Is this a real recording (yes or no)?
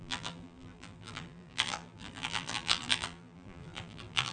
no